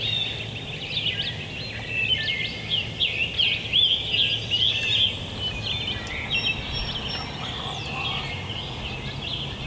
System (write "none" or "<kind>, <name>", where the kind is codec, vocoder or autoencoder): none